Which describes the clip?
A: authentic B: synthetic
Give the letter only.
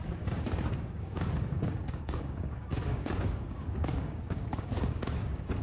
B